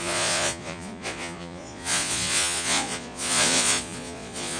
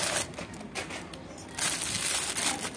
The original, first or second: second